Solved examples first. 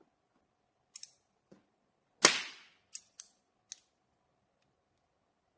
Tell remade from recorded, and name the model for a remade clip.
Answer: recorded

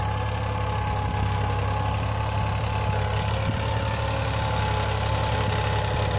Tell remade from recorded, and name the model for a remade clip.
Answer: recorded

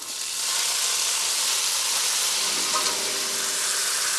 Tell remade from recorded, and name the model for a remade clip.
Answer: recorded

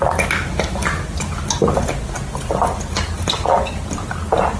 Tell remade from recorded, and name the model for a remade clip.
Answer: recorded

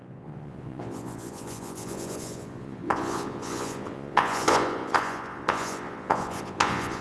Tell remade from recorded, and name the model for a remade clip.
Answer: remade, vocoder, Vocos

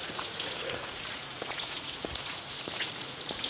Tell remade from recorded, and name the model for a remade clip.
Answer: remade, vocoder, Vocos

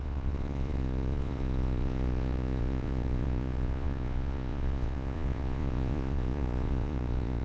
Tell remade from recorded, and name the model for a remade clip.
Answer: remade, vocoder, Vocos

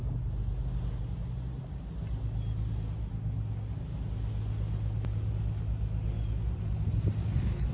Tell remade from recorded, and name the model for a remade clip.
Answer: recorded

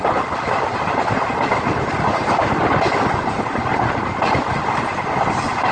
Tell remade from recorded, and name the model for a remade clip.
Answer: recorded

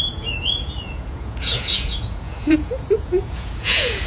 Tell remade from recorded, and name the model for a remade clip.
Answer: remade, vocoder, Vocos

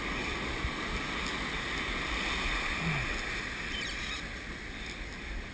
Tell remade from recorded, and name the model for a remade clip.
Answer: recorded